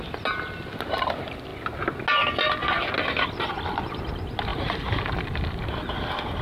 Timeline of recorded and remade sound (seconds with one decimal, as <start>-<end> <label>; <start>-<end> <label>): 0.0-4.5 recorded; 4.5-5.6 remade; 5.6-6.4 recorded